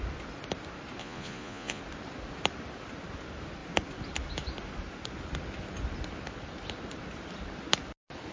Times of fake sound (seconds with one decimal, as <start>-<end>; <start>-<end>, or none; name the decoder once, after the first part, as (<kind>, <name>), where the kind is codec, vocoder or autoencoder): 1.0-1.8 (vocoder, Vocos)